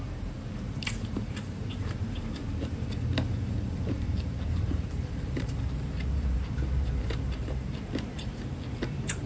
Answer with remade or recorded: remade